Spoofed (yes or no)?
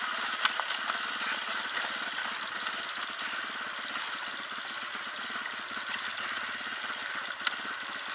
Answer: no